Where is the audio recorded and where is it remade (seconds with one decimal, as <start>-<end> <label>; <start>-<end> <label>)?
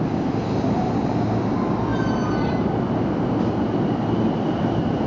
0.0-5.1 recorded